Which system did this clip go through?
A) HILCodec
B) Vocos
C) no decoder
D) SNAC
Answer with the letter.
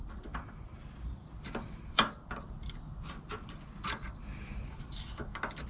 C